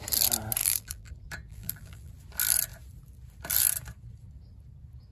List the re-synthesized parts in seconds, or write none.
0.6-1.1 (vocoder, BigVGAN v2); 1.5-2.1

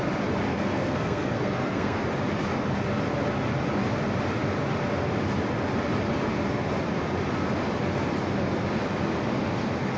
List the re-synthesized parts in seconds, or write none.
0.5-2.0 (codec, SNAC)

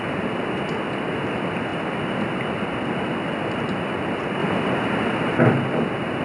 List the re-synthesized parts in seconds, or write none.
none